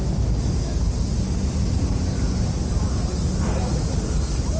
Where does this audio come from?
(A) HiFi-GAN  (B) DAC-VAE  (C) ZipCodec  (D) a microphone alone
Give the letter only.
D